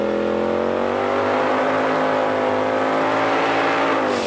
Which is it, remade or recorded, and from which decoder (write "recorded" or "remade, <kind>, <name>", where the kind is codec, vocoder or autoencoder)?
recorded